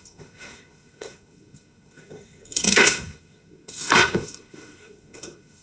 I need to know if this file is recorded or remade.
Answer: remade